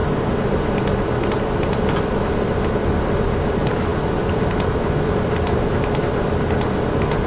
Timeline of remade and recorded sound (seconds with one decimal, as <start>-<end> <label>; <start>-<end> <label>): 0.0-7.3 recorded